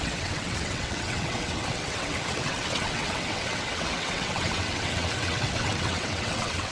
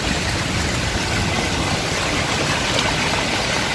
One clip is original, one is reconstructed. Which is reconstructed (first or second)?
first